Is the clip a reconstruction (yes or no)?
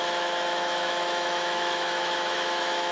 yes